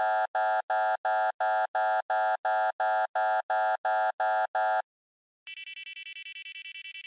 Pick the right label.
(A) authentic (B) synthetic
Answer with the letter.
A